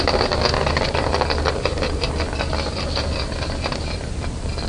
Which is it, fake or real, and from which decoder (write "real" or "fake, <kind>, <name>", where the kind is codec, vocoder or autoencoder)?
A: real